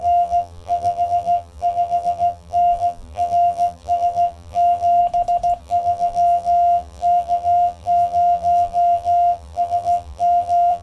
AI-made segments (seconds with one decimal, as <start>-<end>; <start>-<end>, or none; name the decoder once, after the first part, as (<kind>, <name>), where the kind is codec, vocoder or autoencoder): 0.0-5.0 (vocoder, BigVGAN v2); 5.6-10.8